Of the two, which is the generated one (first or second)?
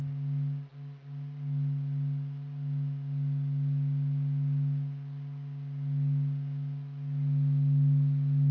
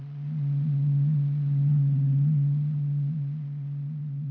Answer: second